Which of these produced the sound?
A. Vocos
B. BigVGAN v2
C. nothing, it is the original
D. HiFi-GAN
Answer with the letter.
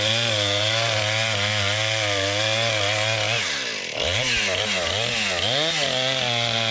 C